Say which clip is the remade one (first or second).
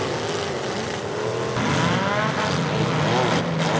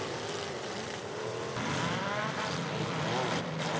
second